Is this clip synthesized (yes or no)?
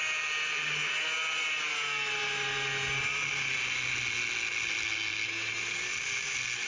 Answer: no